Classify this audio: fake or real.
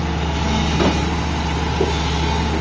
real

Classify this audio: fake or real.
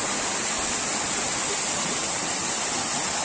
real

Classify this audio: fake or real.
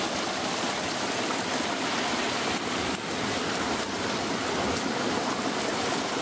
real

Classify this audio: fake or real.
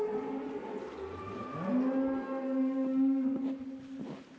real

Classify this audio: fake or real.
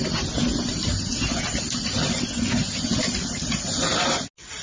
real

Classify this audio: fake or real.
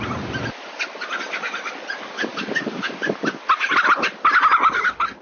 real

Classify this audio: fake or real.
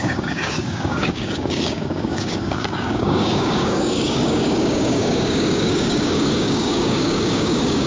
fake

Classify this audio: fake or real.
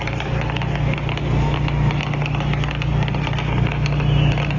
real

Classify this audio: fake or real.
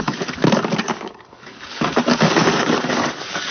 fake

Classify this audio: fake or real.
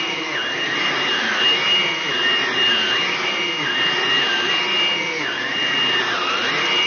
real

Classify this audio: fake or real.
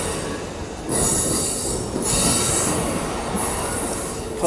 real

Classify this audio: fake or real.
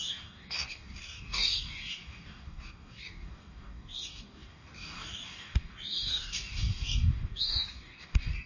fake